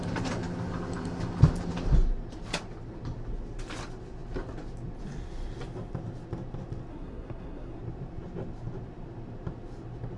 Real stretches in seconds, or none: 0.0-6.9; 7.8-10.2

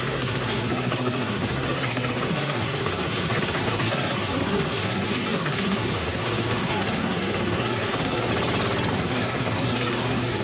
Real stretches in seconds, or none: 8.3-8.9

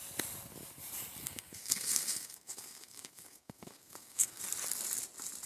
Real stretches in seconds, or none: 0.0-1.2; 4.4-5.5

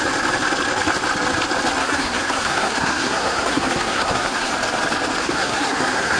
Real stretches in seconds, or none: 0.0-1.8; 4.5-5.2

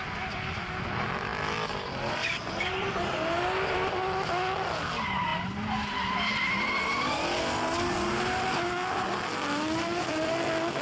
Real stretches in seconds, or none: 0.0-10.8